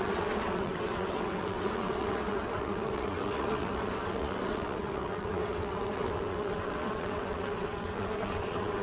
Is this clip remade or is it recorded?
remade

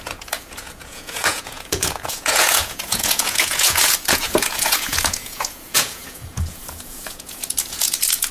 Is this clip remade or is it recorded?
remade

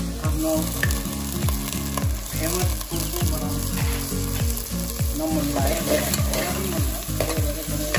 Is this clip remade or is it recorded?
recorded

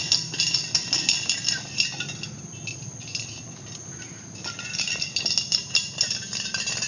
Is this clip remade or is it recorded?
recorded